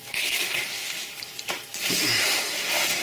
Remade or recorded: recorded